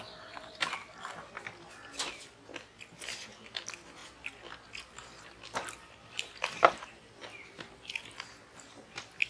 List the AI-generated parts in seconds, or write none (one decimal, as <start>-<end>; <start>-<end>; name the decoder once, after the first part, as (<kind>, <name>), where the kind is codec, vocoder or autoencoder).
4.0-8.7 (vocoder, BigVGAN v2)

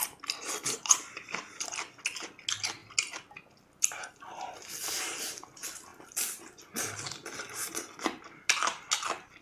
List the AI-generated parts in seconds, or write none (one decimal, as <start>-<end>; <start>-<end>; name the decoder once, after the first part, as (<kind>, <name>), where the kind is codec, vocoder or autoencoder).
none